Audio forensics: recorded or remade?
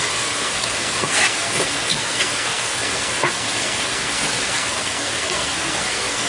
remade